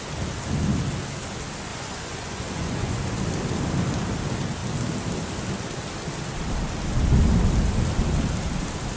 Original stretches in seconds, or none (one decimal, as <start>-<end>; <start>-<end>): 0.0-1.7; 3.0-9.0